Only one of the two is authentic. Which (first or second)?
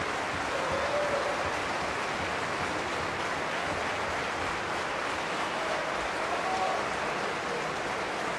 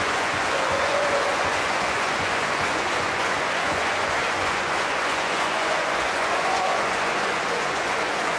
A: first